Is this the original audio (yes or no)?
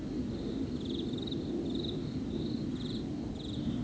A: yes